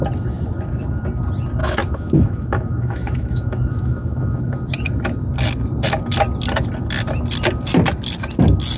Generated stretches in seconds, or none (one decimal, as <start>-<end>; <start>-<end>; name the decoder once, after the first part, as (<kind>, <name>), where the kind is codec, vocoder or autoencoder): 1.6-4.4 (autoencoder, DAC-VAE)